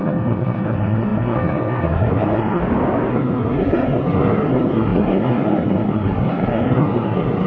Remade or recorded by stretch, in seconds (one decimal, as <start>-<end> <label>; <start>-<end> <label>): 0.0-2.6 remade; 2.6-3.1 recorded; 3.1-7.5 remade